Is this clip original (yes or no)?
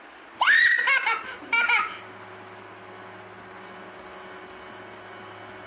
yes